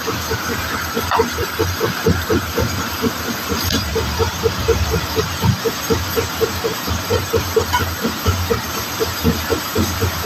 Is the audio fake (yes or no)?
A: yes